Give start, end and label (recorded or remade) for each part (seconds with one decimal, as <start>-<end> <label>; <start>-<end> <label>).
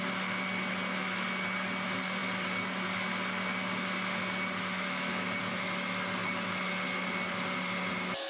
0.0-8.3 recorded